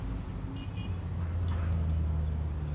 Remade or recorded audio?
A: recorded